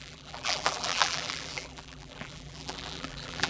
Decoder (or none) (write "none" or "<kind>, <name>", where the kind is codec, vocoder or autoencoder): vocoder, BigVGAN v2